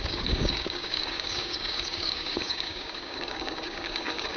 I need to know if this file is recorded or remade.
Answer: remade